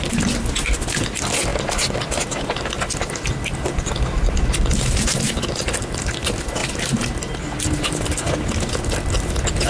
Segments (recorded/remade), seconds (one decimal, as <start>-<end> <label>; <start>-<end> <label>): 0.0-9.7 recorded